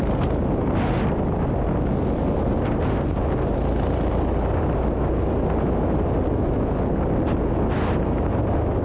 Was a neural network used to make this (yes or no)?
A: no